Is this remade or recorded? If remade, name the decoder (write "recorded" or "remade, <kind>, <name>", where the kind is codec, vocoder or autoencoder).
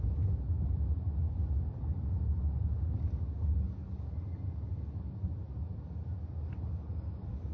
recorded